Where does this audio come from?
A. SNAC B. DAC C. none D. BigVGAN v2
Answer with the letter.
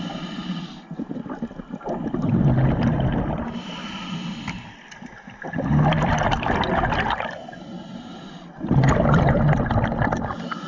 C